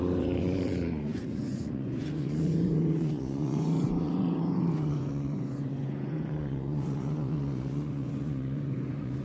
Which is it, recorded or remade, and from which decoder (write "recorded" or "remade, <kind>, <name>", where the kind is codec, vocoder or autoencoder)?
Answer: remade, vocoder, Vocos